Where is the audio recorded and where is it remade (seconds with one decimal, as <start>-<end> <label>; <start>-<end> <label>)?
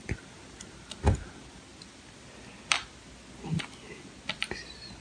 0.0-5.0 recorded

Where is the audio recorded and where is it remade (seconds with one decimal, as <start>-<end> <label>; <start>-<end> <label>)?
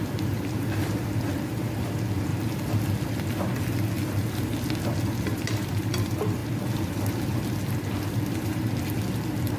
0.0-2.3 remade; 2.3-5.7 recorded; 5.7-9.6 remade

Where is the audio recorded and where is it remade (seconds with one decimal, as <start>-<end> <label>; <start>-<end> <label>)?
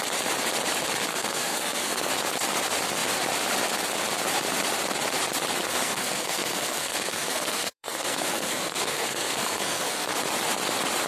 0.0-1.1 recorded; 1.1-2.1 remade; 2.1-5.7 recorded; 5.7-10.1 remade; 10.1-11.1 recorded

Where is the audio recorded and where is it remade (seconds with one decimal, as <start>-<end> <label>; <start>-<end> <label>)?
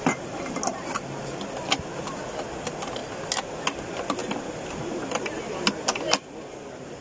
0.0-7.0 recorded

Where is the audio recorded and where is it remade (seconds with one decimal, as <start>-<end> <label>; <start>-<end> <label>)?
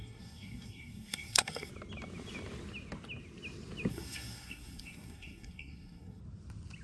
0.0-1.7 remade; 1.7-3.9 recorded; 3.9-6.2 remade; 6.2-6.8 recorded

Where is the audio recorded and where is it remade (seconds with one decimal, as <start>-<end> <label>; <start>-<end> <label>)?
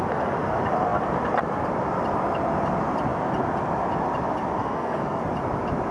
0.0-4.6 recorded; 4.6-5.2 remade; 5.2-5.9 recorded